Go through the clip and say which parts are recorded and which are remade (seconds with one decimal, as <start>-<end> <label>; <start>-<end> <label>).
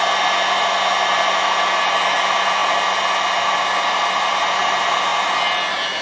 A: 0.0-6.0 recorded